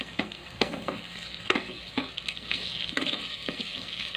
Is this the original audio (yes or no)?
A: no